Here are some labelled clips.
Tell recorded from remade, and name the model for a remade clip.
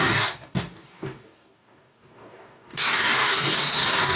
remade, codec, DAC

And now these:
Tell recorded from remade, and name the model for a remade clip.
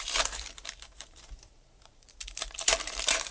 remade, vocoder, BigVGAN v2